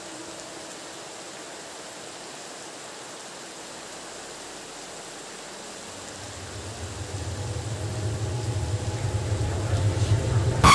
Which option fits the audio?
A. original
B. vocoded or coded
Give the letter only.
A